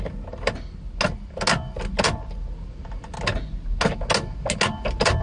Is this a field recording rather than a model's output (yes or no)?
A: yes